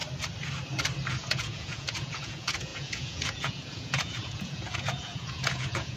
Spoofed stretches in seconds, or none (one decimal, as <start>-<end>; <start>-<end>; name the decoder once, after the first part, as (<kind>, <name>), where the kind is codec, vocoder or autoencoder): 1.1-6.0 (vocoder, Vocos)